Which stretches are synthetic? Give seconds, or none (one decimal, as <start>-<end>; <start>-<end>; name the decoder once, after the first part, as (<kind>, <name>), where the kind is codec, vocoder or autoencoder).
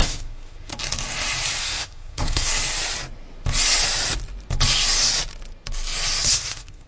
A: 0.0-0.7 (codec, SNAC); 1.6-2.5; 6.3-6.9